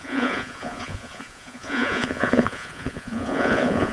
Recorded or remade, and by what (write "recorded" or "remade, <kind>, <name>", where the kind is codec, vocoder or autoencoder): remade, vocoder, Vocos